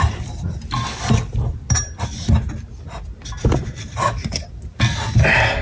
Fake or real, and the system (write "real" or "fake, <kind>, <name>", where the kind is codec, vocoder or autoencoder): real